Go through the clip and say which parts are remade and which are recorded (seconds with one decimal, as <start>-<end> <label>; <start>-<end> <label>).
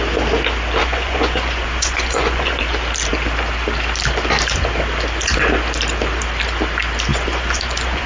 0.0-0.8 recorded; 0.8-2.6 remade; 2.6-7.1 recorded; 7.1-8.1 remade